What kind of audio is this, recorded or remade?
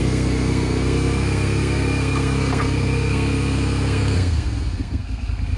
remade